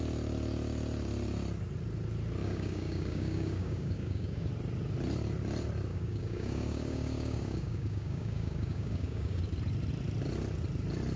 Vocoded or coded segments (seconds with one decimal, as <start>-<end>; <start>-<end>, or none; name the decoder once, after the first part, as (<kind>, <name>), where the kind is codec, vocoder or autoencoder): 2.4-4.5 (codec, DAC); 5.9-9.4